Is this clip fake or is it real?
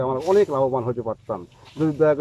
real